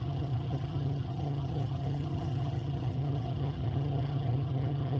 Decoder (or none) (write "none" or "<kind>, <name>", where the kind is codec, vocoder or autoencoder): vocoder, HiFi-GAN